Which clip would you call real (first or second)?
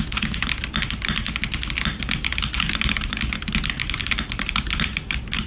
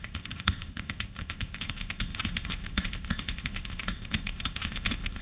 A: first